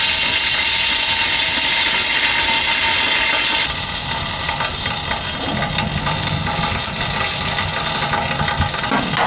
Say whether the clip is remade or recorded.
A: recorded